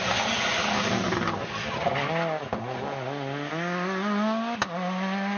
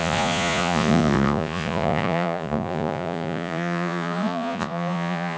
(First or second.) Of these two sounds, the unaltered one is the first